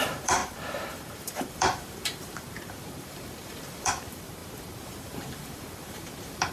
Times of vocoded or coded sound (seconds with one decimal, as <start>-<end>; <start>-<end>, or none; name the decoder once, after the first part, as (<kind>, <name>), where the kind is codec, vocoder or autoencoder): 0.0-6.5 (vocoder, BigVGAN v2)